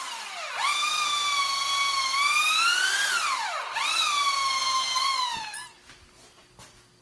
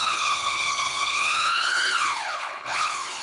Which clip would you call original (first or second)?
first